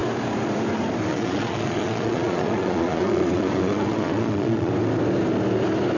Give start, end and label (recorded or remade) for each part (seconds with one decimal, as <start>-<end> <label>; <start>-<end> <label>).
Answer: 0.0-1.1 recorded; 1.1-4.7 remade; 4.7-6.0 recorded